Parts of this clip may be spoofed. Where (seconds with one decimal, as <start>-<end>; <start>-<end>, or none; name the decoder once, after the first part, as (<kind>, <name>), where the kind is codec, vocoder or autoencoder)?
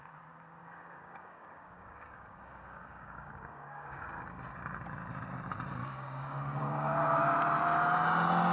0.6-4.0 (codec, DAC); 5.8-7.2